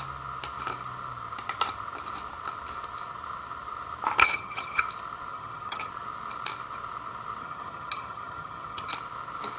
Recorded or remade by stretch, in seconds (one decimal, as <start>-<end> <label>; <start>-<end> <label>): 0.0-4.2 recorded; 4.2-4.8 remade; 4.8-5.3 recorded; 5.3-5.9 remade; 5.9-7.4 recorded; 7.4-8.9 remade; 8.9-9.6 recorded